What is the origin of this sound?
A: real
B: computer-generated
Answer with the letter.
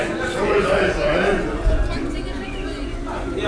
B